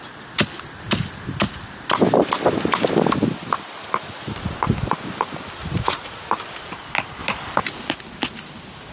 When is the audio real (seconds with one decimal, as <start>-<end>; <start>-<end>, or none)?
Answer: 0.0-5.6; 6.2-8.9